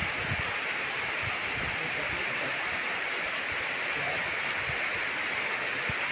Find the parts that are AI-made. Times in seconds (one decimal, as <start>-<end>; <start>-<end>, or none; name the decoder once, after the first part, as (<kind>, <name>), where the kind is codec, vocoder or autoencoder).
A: 0.0-3.7 (vocoder, BigVGAN v2)

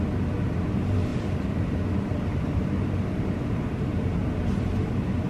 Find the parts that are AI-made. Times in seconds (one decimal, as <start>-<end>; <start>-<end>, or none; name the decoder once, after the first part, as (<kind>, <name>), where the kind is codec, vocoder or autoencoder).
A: 1.1-1.7 (vocoder, BigVGAN v2); 2.1-4.2

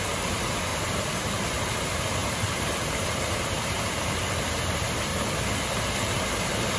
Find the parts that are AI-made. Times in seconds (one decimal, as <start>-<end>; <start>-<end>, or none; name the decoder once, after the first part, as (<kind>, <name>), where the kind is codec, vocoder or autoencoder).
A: 0.0-0.7 (vocoder, BigVGAN v2); 1.6-5.1; 5.8-6.8

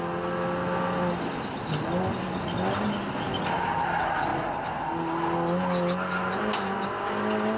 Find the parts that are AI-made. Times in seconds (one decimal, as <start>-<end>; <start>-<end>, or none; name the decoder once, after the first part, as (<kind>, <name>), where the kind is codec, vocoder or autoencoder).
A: none

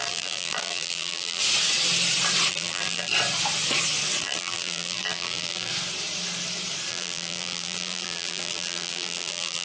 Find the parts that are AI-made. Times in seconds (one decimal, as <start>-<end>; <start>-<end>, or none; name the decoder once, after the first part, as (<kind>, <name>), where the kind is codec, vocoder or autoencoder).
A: 0.0-1.4 (vocoder, BigVGAN v2); 2.5-3.1; 4.2-5.7; 6.9-9.6

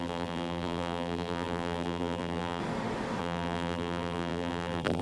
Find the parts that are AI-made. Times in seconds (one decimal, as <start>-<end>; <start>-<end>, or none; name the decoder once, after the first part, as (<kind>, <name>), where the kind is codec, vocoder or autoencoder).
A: 0.0-2.6 (vocoder, BigVGAN v2); 3.2-5.0

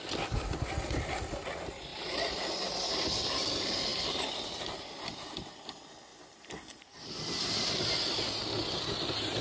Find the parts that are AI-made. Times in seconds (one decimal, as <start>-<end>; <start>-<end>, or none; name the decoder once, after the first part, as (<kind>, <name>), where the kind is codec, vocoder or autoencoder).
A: 6.1-6.8 (vocoder, BigVGAN v2)